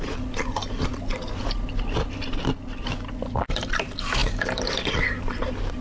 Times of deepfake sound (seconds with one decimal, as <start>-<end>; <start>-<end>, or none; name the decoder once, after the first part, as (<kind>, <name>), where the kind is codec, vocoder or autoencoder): none